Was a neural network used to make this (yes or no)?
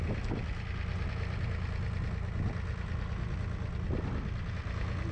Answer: no